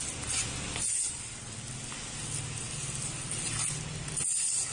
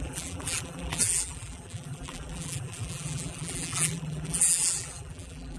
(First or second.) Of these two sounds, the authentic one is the first